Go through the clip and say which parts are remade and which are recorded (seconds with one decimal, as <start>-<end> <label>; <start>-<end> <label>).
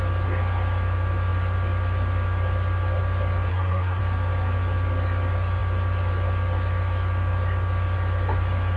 0.0-3.5 recorded; 3.5-4.0 remade; 4.0-8.8 recorded